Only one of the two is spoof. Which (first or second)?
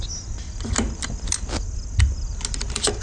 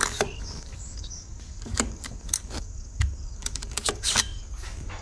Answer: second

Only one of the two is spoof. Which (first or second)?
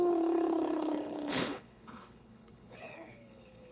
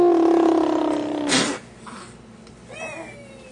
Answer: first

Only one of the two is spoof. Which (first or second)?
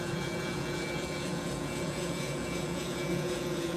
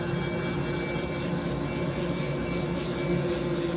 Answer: first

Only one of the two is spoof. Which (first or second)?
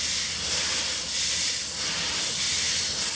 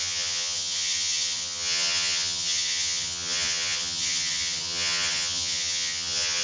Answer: second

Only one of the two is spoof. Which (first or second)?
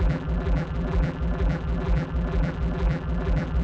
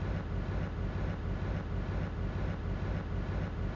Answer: first